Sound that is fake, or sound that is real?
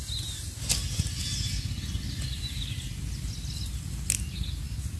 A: real